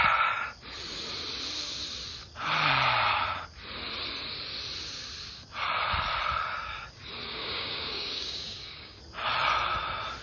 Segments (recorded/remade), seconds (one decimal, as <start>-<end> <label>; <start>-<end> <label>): 0.0-7.3 recorded; 7.3-9.0 remade; 9.0-10.2 recorded